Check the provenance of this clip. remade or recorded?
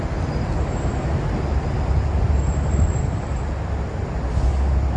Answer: recorded